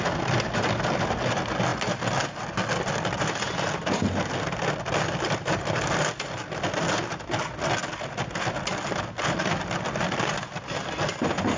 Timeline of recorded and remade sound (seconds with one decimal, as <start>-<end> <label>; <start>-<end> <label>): 0.0-11.6 recorded